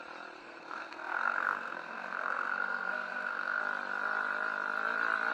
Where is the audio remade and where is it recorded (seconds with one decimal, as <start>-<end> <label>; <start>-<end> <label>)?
0.0-0.4 recorded; 0.4-3.6 remade; 3.6-5.3 recorded